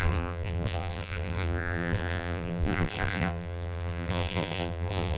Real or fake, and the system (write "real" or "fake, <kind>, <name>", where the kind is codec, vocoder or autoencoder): fake, vocoder, BigVGAN v2